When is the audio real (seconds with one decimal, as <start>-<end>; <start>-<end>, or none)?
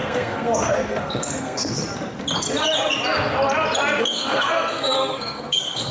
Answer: 1.8-4.0